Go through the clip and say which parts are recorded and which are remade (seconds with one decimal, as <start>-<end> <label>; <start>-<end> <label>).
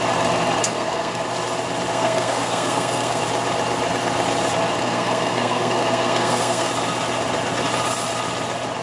0.0-0.6 recorded; 0.6-1.2 remade; 1.2-1.9 recorded; 1.9-3.2 remade; 3.2-4.8 recorded; 4.8-6.7 remade; 6.7-8.8 recorded